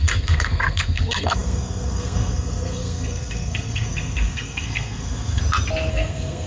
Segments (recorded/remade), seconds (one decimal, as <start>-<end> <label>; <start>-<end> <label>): 0.0-5.4 remade; 5.4-5.9 recorded; 5.9-6.5 remade